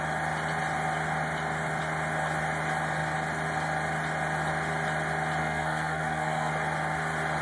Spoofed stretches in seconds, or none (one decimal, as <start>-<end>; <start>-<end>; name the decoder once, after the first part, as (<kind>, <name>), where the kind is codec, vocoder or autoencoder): 5.4-6.5 (codec, SNAC)